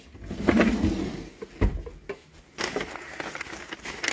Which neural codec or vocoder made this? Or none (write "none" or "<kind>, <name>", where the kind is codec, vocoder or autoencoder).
none